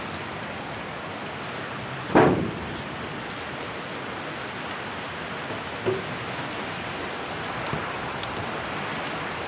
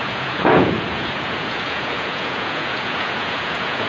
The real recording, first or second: first